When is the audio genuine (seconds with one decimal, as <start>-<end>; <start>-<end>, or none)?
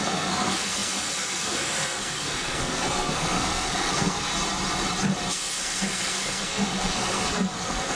4.3-5.3